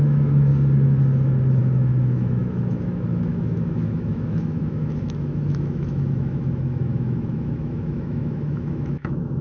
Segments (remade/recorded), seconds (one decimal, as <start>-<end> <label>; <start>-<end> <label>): 0.0-0.5 remade; 0.5-1.6 recorded; 1.6-9.4 remade